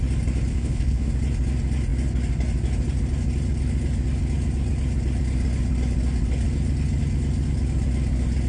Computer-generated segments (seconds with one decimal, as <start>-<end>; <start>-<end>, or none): 0.5-1.1